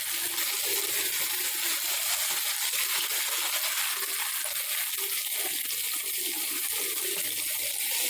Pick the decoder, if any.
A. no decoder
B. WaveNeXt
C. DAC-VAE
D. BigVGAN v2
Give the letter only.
A